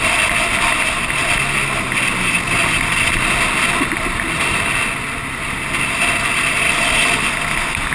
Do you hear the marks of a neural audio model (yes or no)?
no